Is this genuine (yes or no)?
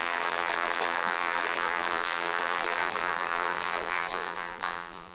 no